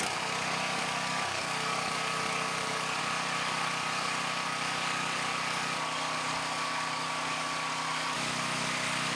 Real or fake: fake